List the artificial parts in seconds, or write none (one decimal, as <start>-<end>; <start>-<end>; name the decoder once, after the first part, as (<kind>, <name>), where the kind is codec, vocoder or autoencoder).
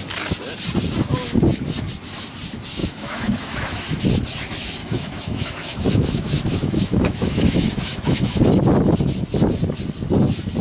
2.8-4.0 (autoencoder, DAC-VAE); 4.8-8.4